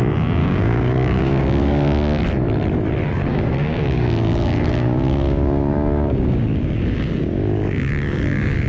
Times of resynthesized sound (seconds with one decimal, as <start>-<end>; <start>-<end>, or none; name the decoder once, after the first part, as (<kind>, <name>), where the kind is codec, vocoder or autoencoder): 0.4-2.2 (codec, DAC); 3.3-8.7